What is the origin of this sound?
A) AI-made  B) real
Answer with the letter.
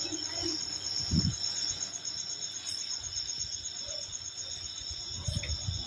A